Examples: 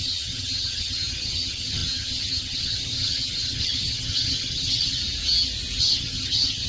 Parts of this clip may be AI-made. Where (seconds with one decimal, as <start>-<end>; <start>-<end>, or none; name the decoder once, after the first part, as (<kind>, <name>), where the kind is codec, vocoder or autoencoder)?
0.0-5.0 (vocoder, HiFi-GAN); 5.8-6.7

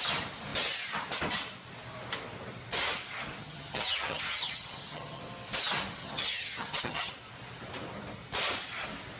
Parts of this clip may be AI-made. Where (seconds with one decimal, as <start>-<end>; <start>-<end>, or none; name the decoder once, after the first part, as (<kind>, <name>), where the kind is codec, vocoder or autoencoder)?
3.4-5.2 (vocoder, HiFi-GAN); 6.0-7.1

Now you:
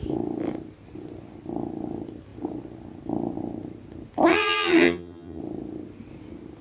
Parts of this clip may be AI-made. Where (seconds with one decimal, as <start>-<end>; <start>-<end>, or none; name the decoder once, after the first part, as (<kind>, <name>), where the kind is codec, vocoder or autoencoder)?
4.3-5.4 (vocoder, HiFi-GAN)